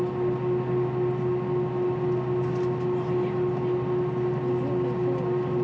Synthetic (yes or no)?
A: no